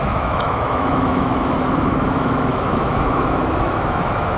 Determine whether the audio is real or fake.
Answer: fake